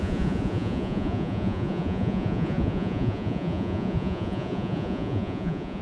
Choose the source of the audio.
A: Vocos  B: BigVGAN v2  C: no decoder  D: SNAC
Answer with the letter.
A